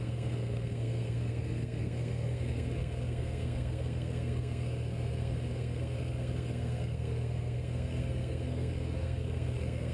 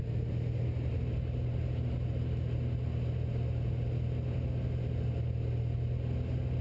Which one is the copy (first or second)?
first